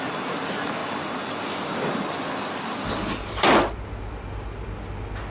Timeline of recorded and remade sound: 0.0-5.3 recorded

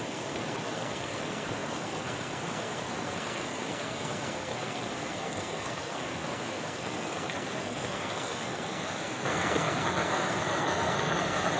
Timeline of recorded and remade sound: 0.0-11.6 remade

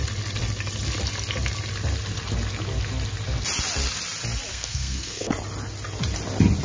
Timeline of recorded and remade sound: 0.0-4.5 recorded; 4.5-5.3 remade; 5.3-6.6 recorded

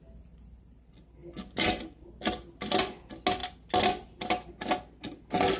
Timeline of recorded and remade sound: 0.0-5.6 recorded

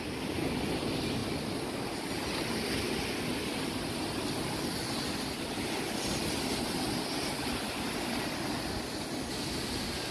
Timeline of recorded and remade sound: 0.0-10.1 recorded

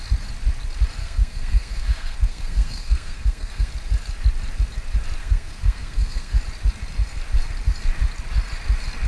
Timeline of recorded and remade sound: 0.0-1.0 recorded; 1.0-3.7 remade; 3.7-5.2 recorded; 5.2-6.4 remade; 6.4-9.1 recorded

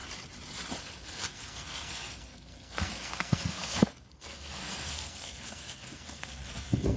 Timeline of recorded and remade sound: 0.0-0.8 recorded; 0.8-7.0 remade